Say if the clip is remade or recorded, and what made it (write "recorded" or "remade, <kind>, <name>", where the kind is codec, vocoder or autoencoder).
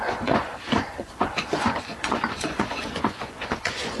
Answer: remade, vocoder, Vocos